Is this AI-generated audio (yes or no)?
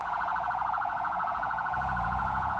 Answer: yes